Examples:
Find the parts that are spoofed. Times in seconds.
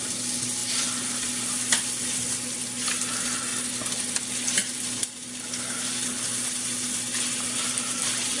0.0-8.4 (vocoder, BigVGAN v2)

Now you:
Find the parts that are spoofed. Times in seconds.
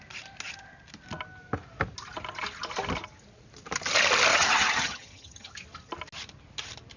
4.3-5.5 (vocoder, HiFi-GAN)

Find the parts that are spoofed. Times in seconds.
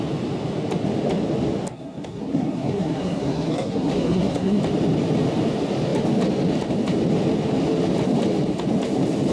1.7-4.6 (codec, SNAC)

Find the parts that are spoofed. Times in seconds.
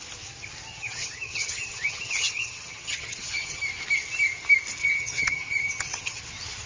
0.7-3.6 (vocoder, HiFi-GAN); 4.8-6.2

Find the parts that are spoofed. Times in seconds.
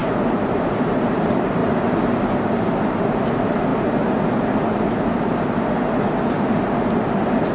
0.0-3.7 (vocoder, BigVGAN v2); 6.9-7.5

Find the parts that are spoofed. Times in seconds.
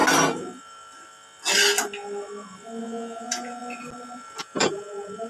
2.8-3.6 (vocoder, Vocos); 4.4-5.3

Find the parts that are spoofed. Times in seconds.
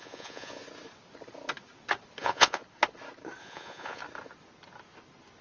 0.0-0.6 (vocoder, Vocos); 2.2-2.6; 3.4-4.0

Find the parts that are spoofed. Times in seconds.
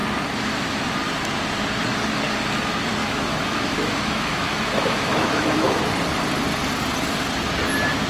3.0-5.9 (autoencoder, DAC-VAE)